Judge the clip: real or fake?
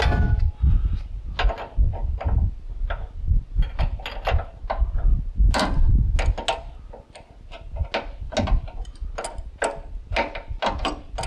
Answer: real